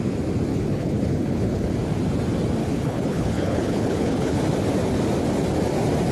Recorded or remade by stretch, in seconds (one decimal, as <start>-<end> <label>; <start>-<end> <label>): 0.0-0.5 recorded; 0.5-1.7 remade; 1.7-2.6 recorded; 2.6-4.4 remade; 4.4-6.1 recorded